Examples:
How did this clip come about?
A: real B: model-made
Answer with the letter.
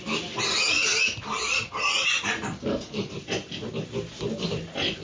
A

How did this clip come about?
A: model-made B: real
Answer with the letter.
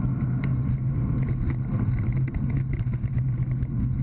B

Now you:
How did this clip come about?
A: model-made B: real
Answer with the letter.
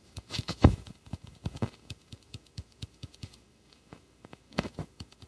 A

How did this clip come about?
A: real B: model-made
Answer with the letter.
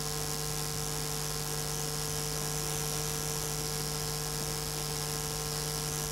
A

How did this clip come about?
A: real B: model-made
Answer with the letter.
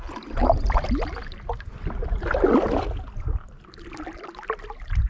A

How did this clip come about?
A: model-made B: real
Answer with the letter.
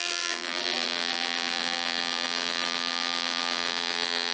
A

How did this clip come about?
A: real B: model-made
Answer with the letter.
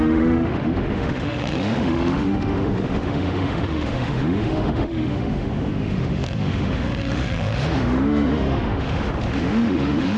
B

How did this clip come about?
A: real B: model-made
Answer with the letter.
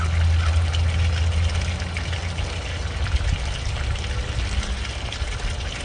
A